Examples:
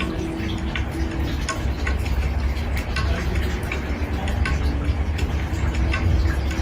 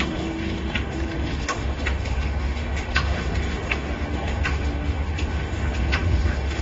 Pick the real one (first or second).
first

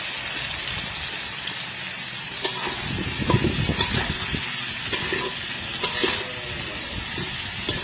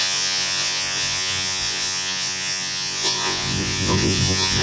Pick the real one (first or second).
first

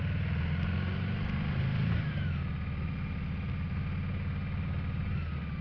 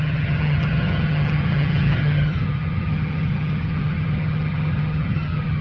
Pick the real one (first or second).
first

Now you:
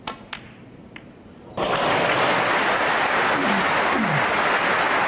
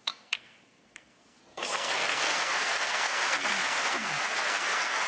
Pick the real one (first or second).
first